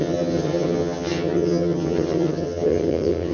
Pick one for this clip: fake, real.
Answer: fake